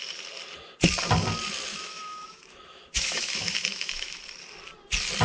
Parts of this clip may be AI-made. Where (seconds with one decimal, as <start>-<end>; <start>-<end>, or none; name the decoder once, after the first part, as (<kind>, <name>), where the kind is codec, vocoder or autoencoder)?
1.7-4.2 (autoencoder, DAC-VAE)